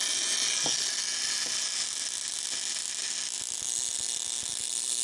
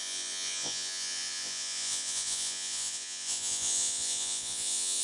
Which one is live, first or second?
first